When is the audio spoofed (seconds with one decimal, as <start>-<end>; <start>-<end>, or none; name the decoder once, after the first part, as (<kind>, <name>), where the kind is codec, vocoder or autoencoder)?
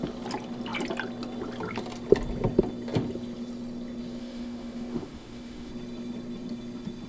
4.2-5.7 (autoencoder, DAC-VAE)